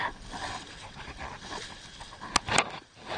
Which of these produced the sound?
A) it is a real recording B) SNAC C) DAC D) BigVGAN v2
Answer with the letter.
A